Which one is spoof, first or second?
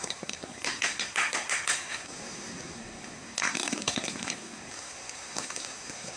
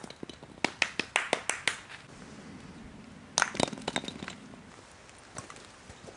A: first